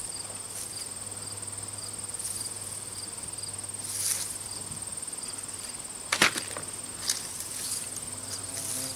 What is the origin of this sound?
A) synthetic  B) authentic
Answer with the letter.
B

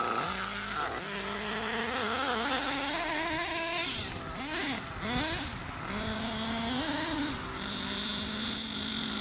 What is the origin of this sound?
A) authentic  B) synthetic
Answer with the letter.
A